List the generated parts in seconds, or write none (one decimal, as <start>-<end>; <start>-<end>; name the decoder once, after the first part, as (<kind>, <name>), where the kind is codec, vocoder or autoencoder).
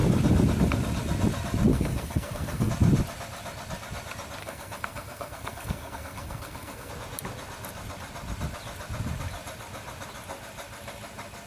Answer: 1.7-2.7 (codec, SNAC); 4.4-6.9